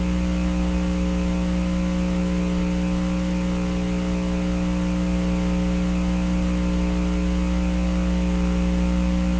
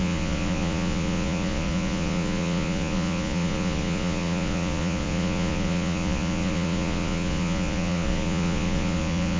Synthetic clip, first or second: second